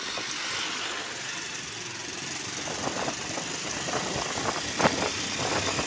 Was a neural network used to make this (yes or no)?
no